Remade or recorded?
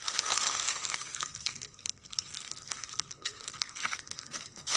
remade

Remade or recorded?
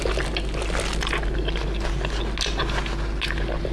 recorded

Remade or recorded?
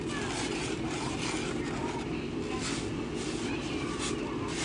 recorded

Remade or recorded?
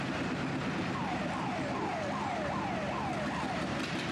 recorded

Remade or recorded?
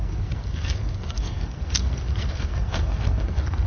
remade